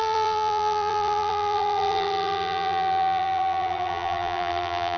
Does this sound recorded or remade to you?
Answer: remade